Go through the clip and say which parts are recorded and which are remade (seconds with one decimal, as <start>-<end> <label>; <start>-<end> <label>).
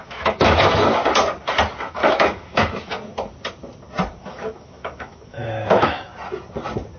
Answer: 0.0-1.0 remade; 1.0-1.9 recorded; 1.9-2.9 remade; 2.9-4.3 recorded; 4.3-6.1 remade; 6.1-7.0 recorded